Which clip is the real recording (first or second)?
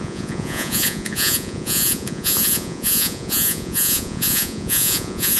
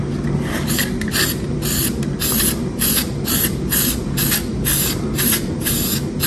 second